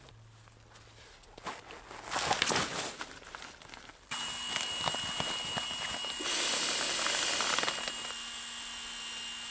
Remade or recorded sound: recorded